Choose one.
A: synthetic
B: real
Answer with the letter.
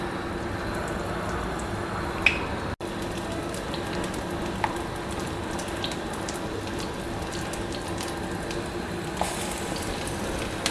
B